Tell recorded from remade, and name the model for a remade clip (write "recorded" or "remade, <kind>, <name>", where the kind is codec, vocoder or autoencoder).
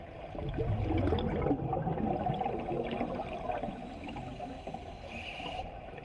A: recorded